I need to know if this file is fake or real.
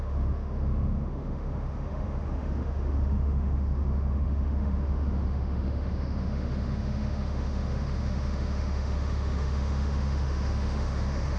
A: fake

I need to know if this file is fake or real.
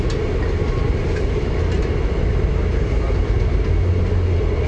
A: real